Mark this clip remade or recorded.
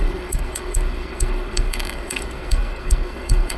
remade